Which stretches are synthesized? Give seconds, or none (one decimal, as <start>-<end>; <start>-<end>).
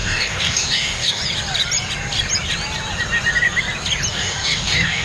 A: 0.0-1.2; 4.1-5.0